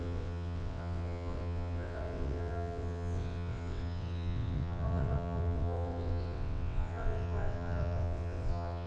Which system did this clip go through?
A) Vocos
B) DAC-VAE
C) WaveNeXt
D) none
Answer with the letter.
C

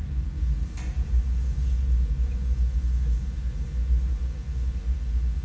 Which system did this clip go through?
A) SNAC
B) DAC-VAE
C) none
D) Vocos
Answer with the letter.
C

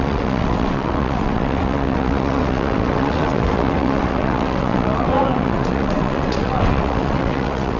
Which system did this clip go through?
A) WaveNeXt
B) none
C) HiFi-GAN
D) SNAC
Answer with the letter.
A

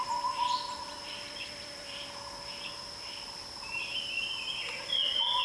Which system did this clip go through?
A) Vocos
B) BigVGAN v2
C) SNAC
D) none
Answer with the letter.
D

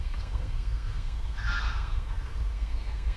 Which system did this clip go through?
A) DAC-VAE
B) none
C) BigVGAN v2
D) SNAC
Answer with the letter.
D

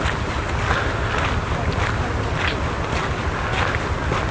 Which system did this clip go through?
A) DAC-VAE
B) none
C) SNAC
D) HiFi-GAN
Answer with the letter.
B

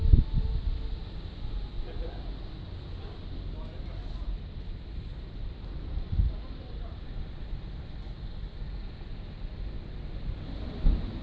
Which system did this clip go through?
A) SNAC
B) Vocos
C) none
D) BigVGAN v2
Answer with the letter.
C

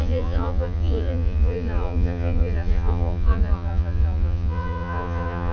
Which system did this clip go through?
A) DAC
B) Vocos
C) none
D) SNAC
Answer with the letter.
B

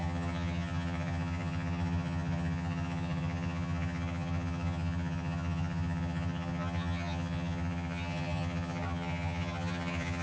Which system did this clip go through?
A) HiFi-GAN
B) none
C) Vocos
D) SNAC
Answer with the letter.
A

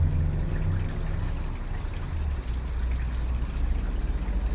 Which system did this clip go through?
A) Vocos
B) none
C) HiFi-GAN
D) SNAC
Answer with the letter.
B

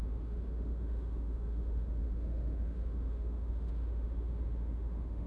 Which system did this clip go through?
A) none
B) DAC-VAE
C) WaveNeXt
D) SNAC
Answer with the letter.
B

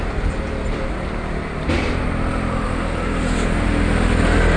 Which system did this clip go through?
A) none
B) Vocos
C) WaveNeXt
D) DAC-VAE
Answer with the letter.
A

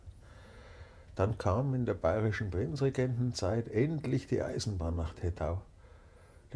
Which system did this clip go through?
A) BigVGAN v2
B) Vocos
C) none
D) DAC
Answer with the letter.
B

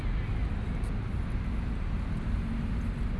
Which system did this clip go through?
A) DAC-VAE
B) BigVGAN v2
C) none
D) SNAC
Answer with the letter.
C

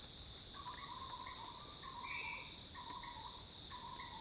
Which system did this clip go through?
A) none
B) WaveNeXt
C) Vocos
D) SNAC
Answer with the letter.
A